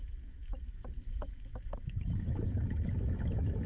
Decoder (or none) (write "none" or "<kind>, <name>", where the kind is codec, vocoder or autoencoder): autoencoder, DAC-VAE